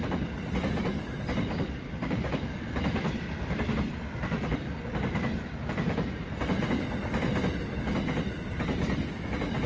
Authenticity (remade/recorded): remade